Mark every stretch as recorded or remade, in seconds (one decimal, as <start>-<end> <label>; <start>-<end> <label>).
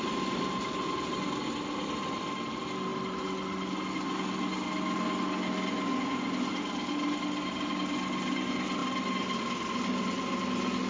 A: 0.0-10.9 recorded